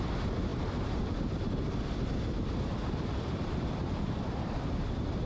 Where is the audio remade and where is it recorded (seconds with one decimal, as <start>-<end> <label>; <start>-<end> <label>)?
0.0-0.5 recorded; 0.5-1.8 remade; 1.8-2.8 recorded; 2.8-5.3 remade